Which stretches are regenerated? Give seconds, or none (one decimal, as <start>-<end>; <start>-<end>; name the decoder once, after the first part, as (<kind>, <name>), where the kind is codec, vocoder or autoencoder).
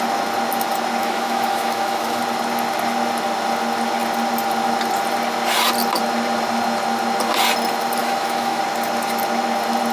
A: 1.0-2.2 (autoencoder, DAC-VAE); 8.0-8.6